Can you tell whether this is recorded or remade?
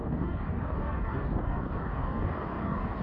remade